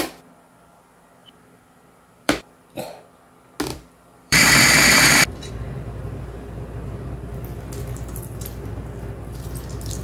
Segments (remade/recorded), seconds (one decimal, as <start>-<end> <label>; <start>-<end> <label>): 0.0-1.2 recorded; 1.2-2.5 remade; 2.5-3.7 recorded; 3.7-5.5 remade; 5.5-10.0 recorded